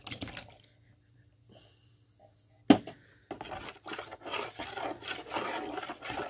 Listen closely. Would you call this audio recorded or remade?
recorded